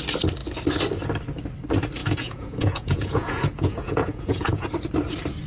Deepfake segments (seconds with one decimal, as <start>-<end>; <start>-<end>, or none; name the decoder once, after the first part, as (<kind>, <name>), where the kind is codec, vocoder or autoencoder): 2.0-4.7 (vocoder, Vocos)